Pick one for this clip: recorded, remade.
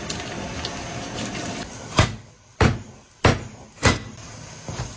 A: recorded